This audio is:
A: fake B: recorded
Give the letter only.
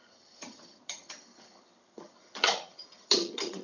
A